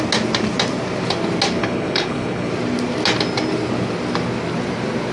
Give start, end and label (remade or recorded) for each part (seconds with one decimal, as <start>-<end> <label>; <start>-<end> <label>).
0.0-1.6 recorded; 1.6-2.5 remade; 2.5-5.1 recorded